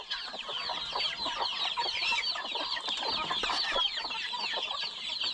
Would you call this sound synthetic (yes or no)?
no